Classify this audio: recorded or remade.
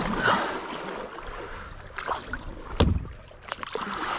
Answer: recorded